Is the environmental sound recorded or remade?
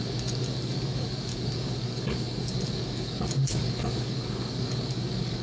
remade